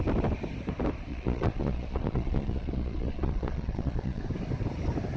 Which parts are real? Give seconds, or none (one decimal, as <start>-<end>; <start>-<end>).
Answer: 0.0-1.1; 4.2-5.2